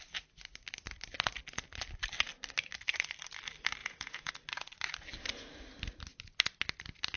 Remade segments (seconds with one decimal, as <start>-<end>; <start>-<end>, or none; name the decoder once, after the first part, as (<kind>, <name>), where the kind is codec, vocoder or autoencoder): 3.8-4.3 (vocoder, Vocos)